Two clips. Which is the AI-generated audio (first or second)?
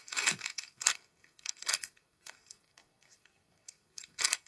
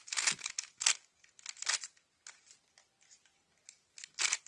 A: first